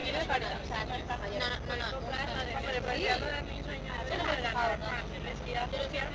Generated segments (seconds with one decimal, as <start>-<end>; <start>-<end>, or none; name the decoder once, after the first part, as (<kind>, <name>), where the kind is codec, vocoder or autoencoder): 0.0-0.5 (vocoder, BigVGAN v2)